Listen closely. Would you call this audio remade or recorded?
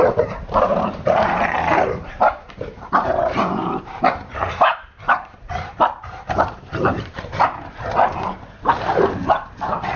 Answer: remade